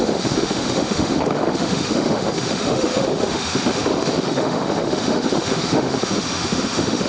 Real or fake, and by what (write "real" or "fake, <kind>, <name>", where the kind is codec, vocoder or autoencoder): fake, autoencoder, DAC-VAE